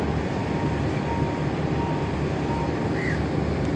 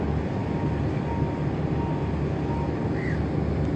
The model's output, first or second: first